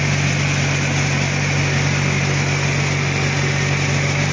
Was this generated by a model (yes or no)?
no